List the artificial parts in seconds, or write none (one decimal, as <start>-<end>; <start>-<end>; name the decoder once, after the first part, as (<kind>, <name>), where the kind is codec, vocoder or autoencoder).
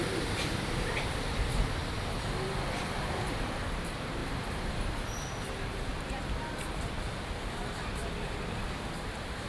0.0-1.8 (vocoder, BigVGAN v2); 2.8-4.2; 8.9-9.5